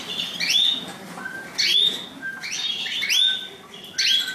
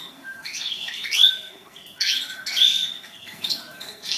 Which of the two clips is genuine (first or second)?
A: first